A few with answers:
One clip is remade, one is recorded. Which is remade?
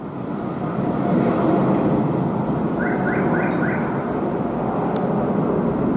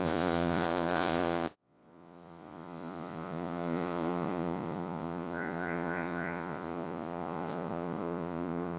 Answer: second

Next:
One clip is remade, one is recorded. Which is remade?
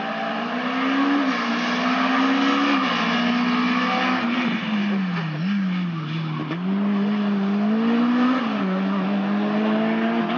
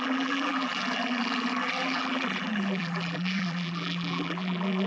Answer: second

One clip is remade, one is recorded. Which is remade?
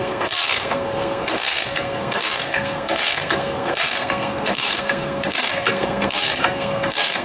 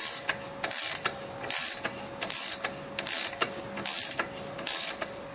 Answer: first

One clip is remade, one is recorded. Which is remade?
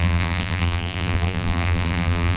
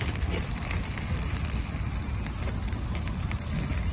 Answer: first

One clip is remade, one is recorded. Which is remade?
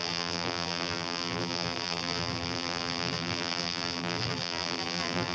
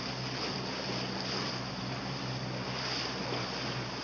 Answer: first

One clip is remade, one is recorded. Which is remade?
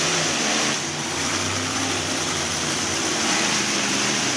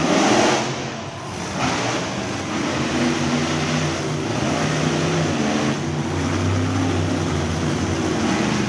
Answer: first